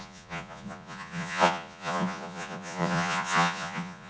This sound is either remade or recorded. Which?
remade